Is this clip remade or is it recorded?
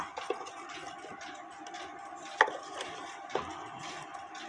recorded